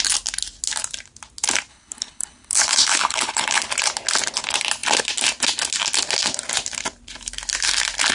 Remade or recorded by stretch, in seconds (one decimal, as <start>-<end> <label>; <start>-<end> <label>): 0.0-1.7 recorded; 1.7-3.7 remade; 3.7-8.1 recorded